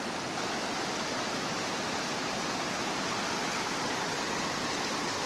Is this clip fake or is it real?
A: real